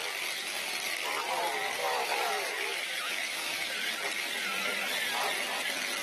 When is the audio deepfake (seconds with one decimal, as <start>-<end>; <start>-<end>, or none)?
1.8-3.7